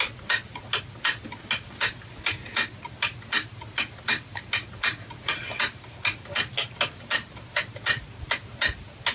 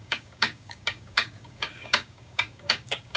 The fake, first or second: second